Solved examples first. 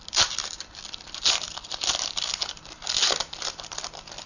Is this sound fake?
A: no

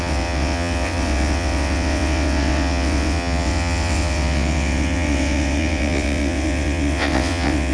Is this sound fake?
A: yes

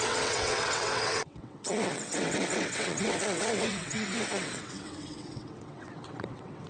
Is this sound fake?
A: yes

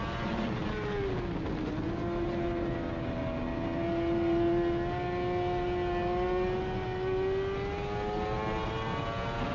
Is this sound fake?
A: no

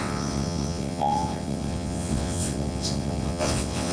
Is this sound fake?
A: yes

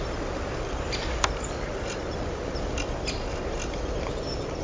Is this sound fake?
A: no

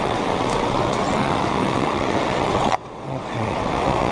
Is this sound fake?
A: yes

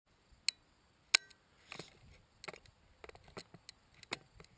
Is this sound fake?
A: no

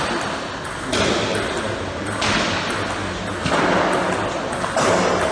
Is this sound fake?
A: no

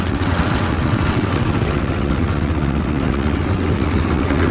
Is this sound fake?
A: yes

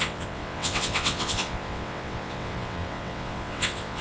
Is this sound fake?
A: yes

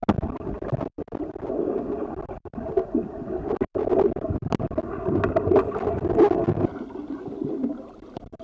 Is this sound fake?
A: no